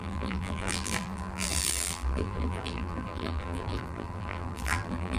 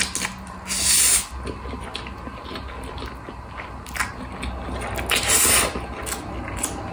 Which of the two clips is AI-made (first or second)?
first